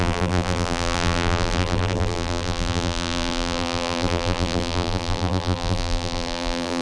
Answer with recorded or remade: remade